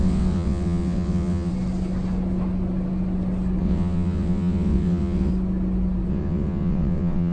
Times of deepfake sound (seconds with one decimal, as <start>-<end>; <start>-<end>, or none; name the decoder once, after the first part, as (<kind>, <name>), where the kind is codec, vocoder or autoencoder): 0.0-1.5 (vocoder, WaveNeXt); 3.6-5.3; 6.1-7.3